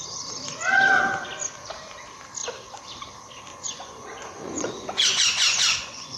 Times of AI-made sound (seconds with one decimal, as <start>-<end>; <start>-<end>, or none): 3.5-6.2